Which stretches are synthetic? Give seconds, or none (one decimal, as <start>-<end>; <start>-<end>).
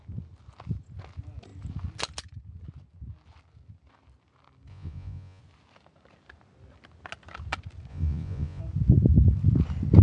4.7-5.4; 7.9-8.6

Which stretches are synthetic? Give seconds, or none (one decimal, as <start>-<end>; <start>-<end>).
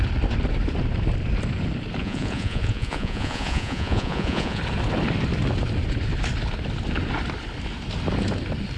2.0-4.6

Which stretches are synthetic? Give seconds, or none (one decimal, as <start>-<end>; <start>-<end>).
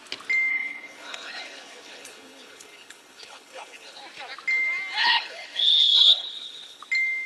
0.5-4.0; 5.0-6.8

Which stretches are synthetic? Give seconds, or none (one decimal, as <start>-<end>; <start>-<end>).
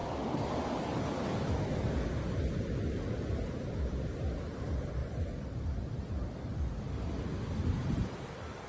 5.0-8.7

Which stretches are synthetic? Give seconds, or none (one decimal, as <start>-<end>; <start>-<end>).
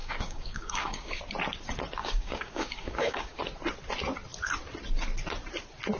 0.0-1.2; 2.0-3.4